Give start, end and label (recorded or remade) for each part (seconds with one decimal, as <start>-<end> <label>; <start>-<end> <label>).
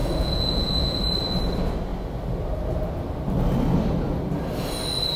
0.0-1.0 remade; 1.0-5.2 recorded